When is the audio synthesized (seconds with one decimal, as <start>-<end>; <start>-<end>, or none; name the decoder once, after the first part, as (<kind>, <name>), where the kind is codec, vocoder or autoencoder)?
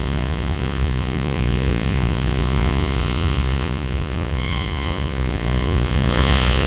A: 0.0-6.7 (vocoder, Vocos)